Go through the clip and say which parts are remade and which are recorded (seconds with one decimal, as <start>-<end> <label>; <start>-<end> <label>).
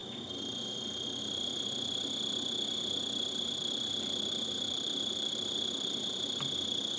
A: 0.0-3.6 recorded; 3.6-6.4 remade; 6.4-7.0 recorded